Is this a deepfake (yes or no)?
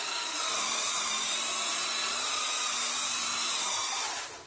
yes